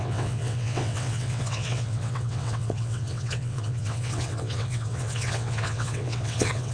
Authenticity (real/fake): fake